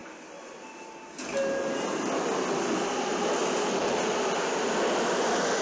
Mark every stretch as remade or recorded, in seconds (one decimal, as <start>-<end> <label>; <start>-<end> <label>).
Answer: 0.0-5.6 recorded